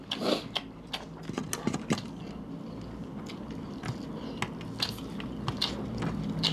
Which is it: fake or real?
real